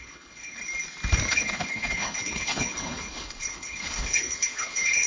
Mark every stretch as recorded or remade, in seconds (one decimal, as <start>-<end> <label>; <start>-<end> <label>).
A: 0.0-0.6 remade; 0.6-1.3 recorded; 1.3-5.1 remade